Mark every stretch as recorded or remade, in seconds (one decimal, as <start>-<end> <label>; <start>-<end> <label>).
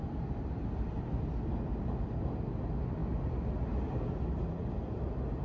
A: 0.0-1.0 remade; 1.0-5.4 recorded